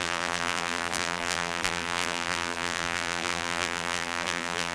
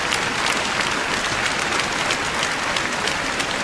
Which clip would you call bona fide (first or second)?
second